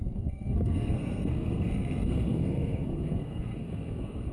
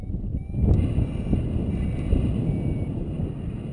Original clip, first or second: second